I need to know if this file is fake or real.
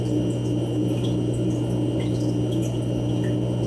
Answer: real